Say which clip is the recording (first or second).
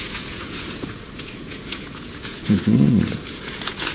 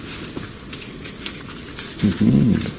second